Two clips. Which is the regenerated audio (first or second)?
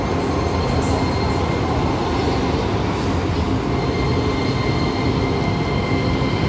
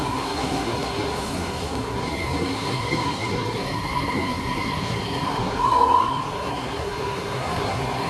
second